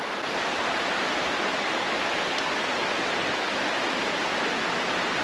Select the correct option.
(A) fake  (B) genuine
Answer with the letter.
B